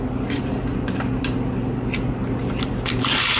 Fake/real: real